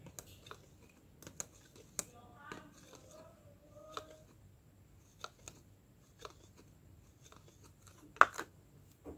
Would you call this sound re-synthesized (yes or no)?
no